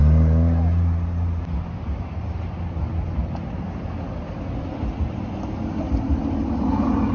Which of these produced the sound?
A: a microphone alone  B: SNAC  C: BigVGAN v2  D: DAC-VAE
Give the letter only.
A